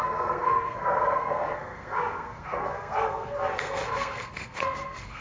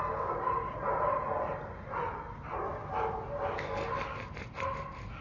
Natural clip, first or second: second